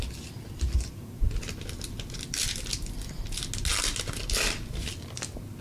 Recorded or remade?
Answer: recorded